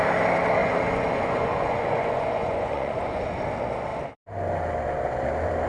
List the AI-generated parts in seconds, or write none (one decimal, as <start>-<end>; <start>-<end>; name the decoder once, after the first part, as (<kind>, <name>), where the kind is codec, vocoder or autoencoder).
0.6-3.2 (vocoder, Vocos)